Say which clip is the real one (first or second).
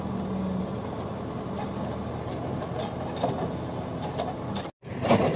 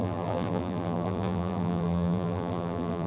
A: first